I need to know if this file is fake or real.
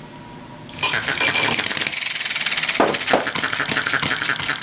real